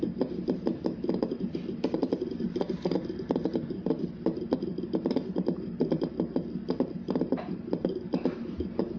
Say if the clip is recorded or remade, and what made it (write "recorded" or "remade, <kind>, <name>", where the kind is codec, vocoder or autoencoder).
recorded